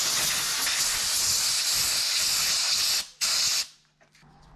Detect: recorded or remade recorded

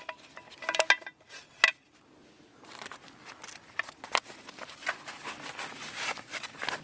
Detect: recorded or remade recorded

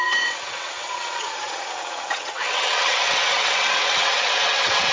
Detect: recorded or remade remade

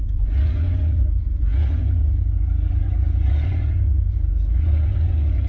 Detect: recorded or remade remade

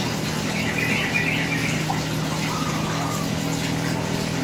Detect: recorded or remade recorded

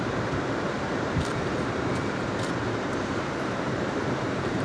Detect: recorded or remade remade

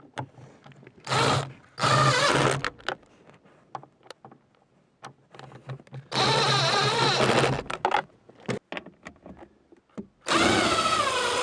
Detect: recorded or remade recorded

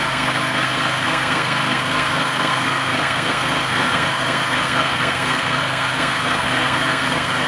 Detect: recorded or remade remade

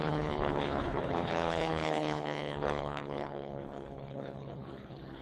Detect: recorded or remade remade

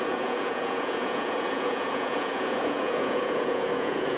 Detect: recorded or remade remade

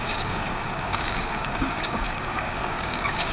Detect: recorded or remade remade